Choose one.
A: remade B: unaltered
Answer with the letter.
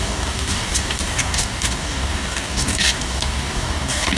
A